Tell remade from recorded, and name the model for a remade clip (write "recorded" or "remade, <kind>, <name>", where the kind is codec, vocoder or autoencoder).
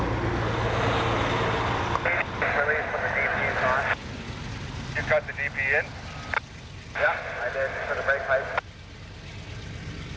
recorded